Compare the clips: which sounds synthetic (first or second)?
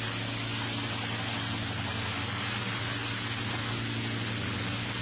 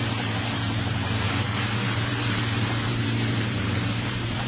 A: second